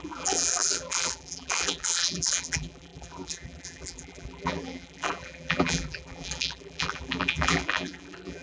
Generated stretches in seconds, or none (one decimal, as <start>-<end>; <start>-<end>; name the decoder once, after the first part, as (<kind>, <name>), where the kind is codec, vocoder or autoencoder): 0.0-8.4 (vocoder, BigVGAN v2)